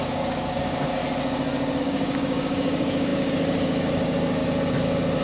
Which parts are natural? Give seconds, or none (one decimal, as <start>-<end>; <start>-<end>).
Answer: 1.0-1.8; 4.4-5.2